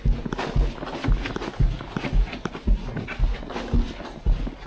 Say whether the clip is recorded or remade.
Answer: recorded